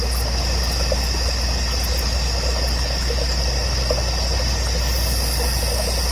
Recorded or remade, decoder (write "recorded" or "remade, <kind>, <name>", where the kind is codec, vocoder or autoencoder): recorded